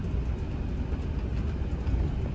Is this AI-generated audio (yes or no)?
no